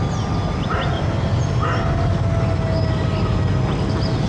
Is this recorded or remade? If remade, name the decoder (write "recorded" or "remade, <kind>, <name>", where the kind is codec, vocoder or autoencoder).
recorded